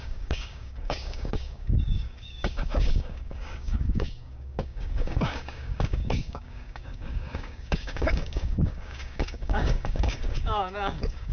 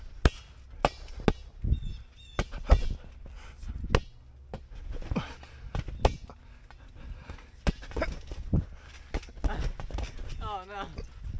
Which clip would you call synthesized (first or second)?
first